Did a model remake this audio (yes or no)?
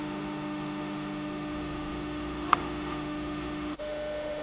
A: yes